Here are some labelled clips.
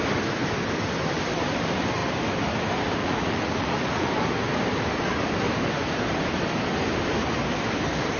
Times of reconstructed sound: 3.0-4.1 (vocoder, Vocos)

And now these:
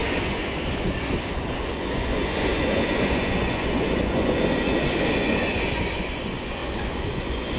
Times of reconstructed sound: 0.0-7.6 (vocoder, Vocos)

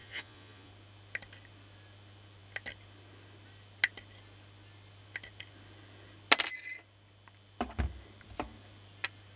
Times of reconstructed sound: 0.0-0.7 (vocoder, Vocos)

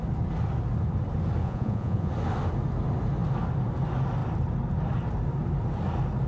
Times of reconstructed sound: 1.4-2.1 (vocoder, Vocos)

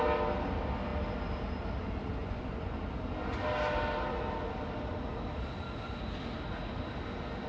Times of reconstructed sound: 2.2-2.8 (vocoder, Vocos)

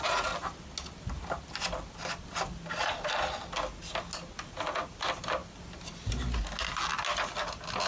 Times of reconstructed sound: none

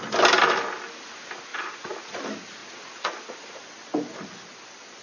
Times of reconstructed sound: 1.5-2.2 (vocoder, Vocos); 2.6-3.6

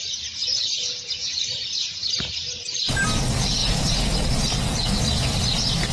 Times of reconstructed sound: 0.4-2.1 (vocoder, Vocos); 3.6-5.0